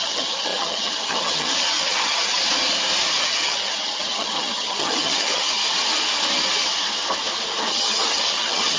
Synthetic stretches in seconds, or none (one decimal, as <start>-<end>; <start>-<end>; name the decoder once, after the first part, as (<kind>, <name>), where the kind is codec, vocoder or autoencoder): 0.0-2.4 (vocoder, HiFi-GAN); 3.2-5.6; 7.7-8.8